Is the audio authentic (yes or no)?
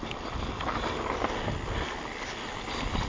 yes